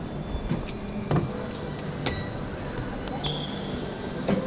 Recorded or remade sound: recorded